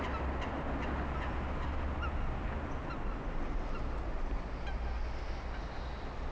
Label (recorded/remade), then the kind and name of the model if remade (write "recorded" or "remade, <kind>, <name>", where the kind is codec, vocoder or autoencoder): recorded